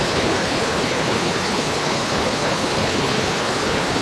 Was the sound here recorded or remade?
remade